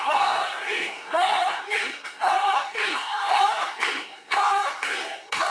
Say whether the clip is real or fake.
fake